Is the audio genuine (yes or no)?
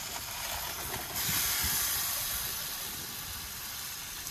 yes